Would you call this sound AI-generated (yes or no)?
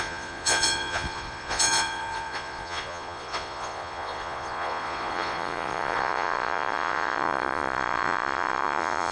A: yes